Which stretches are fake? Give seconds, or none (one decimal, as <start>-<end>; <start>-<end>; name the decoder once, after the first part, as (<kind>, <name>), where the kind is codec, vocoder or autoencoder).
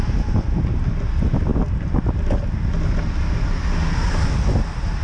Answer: none